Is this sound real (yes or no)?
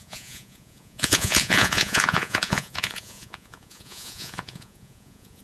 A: no